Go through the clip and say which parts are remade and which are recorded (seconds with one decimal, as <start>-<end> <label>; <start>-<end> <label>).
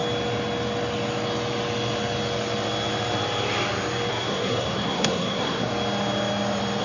0.0-4.1 recorded; 4.1-5.7 remade; 5.7-6.8 recorded